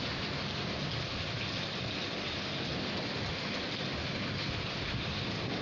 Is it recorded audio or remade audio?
recorded